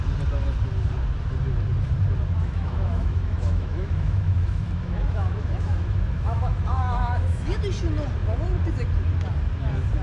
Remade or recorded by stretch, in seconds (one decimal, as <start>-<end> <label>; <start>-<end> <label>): 0.0-2.4 recorded; 2.4-7.6 remade; 7.6-10.0 recorded